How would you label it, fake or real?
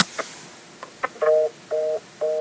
real